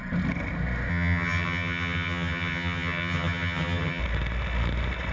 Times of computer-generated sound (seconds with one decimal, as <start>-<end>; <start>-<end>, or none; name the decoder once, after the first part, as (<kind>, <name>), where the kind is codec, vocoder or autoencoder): 0.9-4.0 (vocoder, HiFi-GAN)